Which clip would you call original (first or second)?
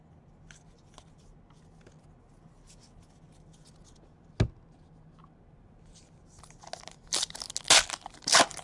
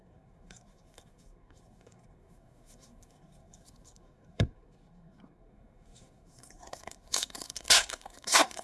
first